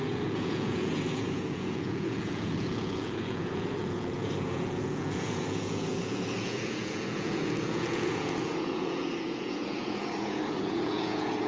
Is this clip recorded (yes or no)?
no